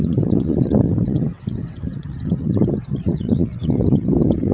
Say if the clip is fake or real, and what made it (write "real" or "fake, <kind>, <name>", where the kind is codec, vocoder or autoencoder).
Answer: fake, vocoder, WaveNeXt